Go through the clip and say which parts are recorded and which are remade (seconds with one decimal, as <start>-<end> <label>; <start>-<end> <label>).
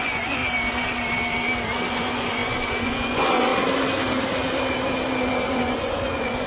0.0-0.4 remade; 0.4-1.9 recorded; 1.9-3.5 remade; 3.5-5.5 recorded; 5.5-6.5 remade